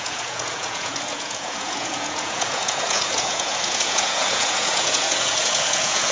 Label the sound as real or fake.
fake